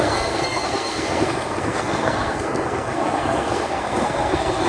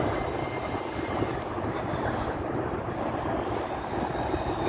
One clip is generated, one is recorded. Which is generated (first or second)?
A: first